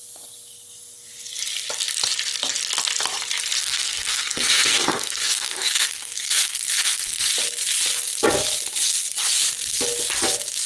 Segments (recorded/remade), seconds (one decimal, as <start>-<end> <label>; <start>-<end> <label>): 0.0-3.6 recorded; 3.6-7.3 remade; 7.3-10.7 recorded